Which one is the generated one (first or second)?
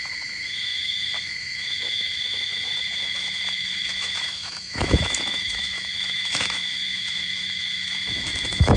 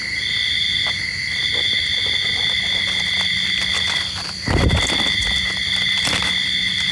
first